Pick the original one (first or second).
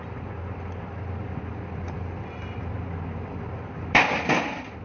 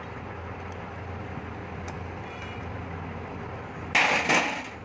second